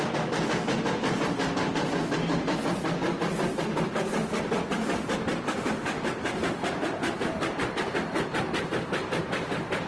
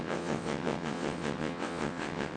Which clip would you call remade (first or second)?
second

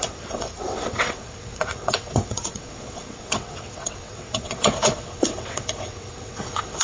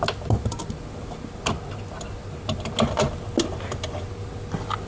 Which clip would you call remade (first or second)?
first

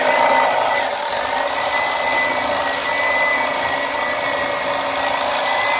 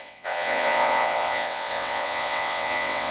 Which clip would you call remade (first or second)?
second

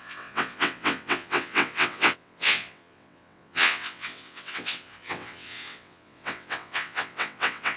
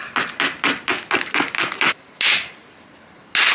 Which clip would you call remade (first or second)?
first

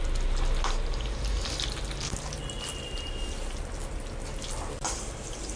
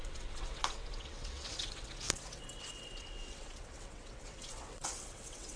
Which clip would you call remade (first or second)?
second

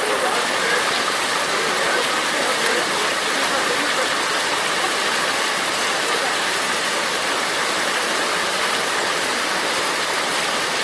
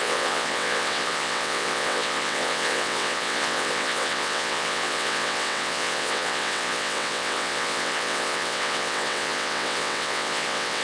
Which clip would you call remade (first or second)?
second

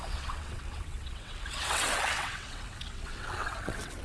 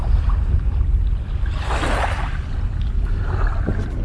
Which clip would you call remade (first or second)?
first